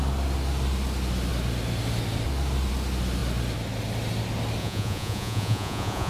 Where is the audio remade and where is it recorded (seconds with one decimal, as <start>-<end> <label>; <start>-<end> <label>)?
0.0-4.6 recorded; 4.6-6.1 remade

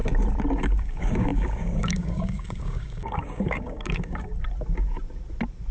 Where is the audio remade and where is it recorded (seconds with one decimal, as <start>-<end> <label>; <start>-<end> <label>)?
0.0-0.6 recorded; 0.6-4.3 remade; 4.3-5.7 recorded